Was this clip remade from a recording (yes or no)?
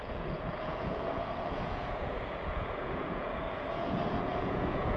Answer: yes